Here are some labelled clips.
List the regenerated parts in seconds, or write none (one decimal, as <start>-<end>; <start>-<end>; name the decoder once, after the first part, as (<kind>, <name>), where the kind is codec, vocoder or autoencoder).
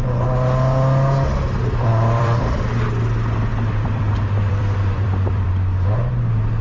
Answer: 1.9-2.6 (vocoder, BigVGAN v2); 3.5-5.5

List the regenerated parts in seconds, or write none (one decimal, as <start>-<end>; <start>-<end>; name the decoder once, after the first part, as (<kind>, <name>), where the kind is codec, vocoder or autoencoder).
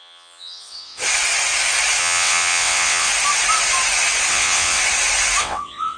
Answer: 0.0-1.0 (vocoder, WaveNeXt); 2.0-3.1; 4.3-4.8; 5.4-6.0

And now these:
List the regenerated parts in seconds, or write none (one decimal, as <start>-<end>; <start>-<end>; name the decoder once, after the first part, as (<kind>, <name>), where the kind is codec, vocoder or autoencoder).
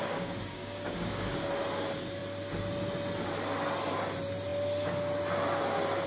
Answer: 0.0-1.5 (codec, DAC)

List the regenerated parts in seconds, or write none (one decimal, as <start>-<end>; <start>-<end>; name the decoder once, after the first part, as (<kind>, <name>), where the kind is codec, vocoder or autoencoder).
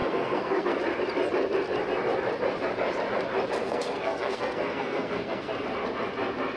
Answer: 0.0-0.8 (codec, SNAC); 3.6-5.5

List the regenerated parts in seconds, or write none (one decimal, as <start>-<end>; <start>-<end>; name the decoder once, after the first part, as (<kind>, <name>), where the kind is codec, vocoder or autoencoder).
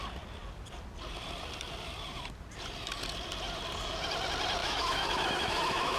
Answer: 4.6-6.0 (autoencoder, DAC-VAE)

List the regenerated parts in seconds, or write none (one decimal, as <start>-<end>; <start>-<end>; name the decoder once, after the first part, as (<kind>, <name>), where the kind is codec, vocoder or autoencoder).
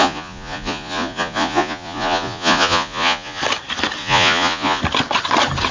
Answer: 0.0-3.4 (vocoder, Vocos); 4.0-4.8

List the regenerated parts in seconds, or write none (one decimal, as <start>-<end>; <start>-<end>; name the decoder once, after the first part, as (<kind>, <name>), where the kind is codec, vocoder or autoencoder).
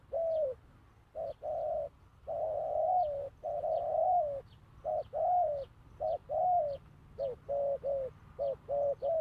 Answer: none